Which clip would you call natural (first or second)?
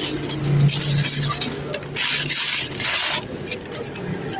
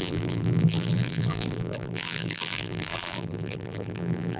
first